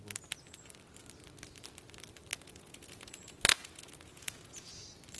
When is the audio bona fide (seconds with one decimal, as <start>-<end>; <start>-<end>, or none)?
0.0-2.3; 4.7-5.2